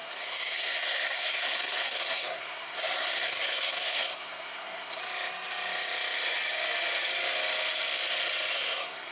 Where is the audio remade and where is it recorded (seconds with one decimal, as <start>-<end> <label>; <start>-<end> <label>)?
0.0-5.0 remade; 5.0-8.5 recorded; 8.5-9.1 remade